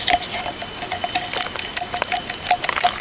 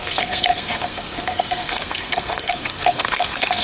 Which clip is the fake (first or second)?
second